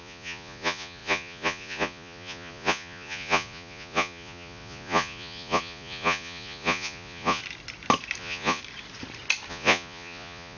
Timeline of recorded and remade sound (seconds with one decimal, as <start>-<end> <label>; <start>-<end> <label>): 0.0-7.4 remade; 7.4-8.2 recorded; 8.2-8.6 remade; 8.6-9.5 recorded; 9.5-10.6 remade